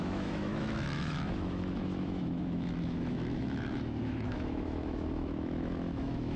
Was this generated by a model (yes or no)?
yes